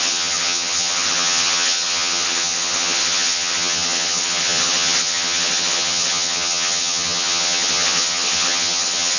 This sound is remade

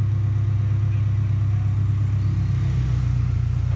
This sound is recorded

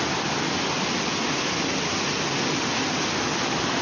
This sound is recorded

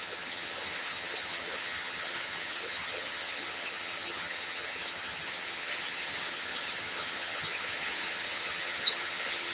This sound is remade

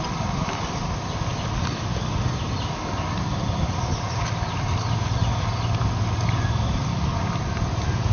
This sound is recorded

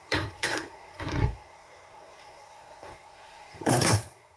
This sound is remade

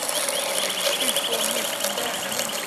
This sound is recorded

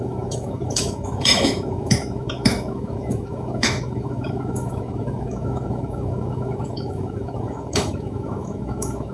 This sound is remade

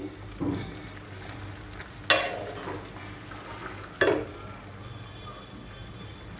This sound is recorded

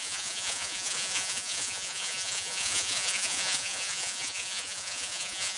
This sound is remade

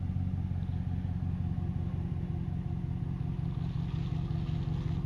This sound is recorded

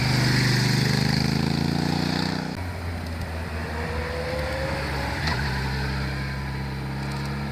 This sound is recorded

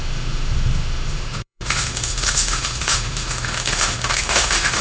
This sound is remade